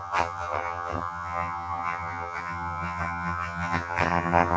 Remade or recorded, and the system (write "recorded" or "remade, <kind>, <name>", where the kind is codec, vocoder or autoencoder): remade, vocoder, HiFi-GAN